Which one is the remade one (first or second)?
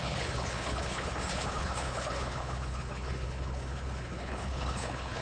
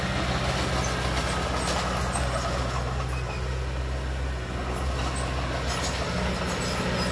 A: first